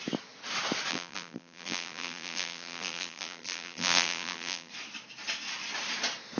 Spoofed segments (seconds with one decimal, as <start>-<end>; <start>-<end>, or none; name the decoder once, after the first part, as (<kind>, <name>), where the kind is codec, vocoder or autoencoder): 0.9-4.7 (vocoder, BigVGAN v2)

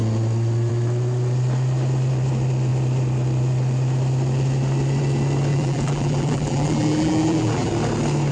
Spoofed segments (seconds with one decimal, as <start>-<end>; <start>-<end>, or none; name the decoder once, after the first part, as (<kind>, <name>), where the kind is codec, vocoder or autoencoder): 5.5-7.7 (vocoder, BigVGAN v2)